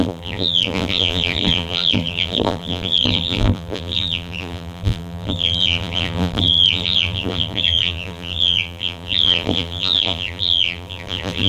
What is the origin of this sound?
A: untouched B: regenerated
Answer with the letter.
B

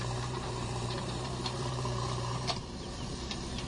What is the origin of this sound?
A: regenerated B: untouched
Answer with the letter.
A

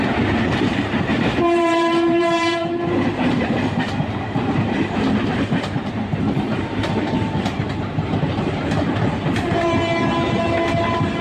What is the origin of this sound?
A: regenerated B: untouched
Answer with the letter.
A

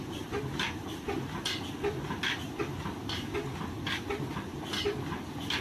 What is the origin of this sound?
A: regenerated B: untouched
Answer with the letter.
B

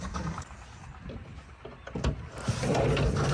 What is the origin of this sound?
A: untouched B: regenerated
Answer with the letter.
A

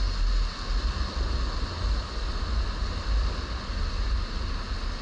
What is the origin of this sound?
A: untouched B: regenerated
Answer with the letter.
A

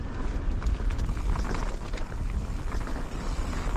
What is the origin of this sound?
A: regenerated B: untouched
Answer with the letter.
B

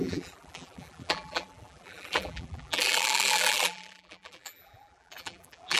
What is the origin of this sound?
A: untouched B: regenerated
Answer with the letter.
B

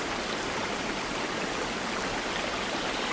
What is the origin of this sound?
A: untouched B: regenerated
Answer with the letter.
A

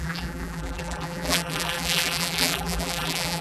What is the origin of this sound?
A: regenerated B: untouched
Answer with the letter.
A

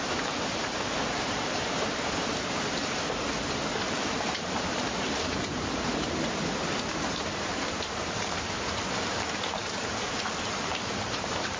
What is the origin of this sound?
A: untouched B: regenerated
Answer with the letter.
B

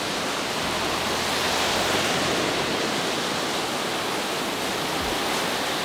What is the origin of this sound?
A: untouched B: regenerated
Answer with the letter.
A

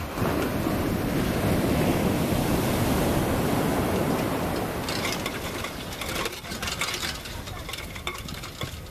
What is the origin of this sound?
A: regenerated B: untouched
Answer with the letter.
A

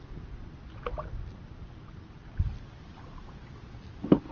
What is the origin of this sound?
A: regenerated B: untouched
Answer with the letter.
B